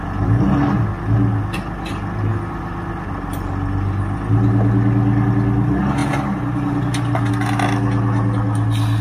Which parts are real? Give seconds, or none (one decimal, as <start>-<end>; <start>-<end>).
0.0-9.0

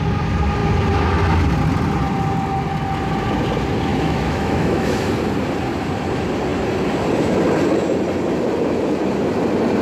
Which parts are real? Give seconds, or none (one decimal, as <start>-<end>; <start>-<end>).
0.0-3.9; 5.1-9.8

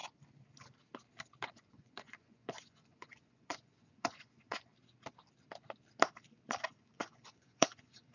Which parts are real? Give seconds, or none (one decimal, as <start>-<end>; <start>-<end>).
0.0-1.5; 4.7-6.7

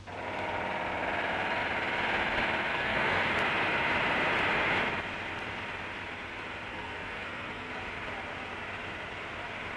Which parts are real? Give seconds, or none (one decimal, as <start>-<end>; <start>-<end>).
0.0-2.7; 3.2-6.7; 7.7-9.8

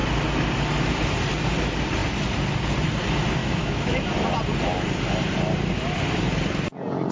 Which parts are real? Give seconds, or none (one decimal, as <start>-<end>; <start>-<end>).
0.0-3.4; 4.1-7.1